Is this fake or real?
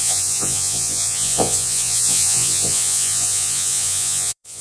fake